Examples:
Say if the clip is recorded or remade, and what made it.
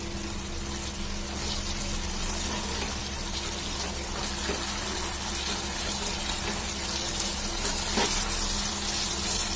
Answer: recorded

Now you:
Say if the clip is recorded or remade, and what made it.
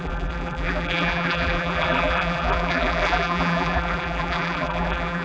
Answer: remade, vocoder, BigVGAN v2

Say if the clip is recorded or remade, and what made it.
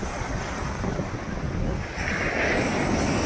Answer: recorded